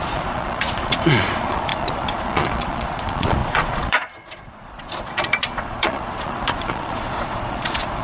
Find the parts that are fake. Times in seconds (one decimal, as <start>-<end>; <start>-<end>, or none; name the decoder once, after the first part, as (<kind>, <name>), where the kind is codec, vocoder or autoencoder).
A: 0.0-8.0 (vocoder, Vocos)